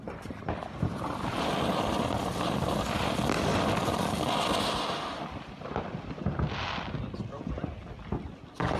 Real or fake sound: real